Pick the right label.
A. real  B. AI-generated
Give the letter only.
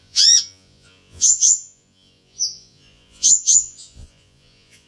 B